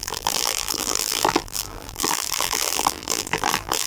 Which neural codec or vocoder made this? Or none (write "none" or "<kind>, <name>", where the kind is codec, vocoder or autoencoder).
vocoder, BigVGAN v2